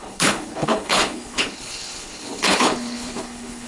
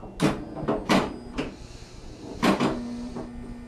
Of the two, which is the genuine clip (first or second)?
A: second